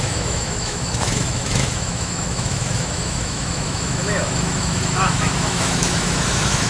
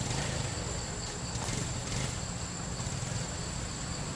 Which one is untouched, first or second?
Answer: second